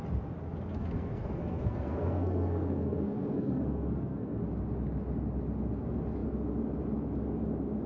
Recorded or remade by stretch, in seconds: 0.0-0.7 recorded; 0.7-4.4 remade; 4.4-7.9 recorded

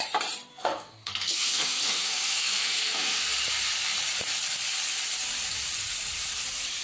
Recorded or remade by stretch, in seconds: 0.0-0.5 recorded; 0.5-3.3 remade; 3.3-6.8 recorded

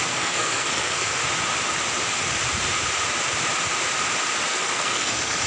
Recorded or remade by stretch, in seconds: 0.0-1.2 remade; 1.2-4.5 recorded; 4.5-5.5 remade

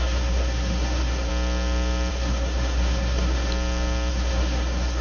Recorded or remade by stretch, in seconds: 0.0-1.3 remade; 1.3-2.1 recorded; 2.1-3.5 remade; 3.5-4.1 recorded; 4.1-5.0 remade

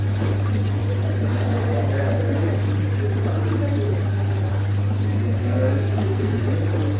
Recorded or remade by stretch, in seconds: 0.0-5.4 recorded; 5.4-6.4 remade; 6.4-7.0 recorded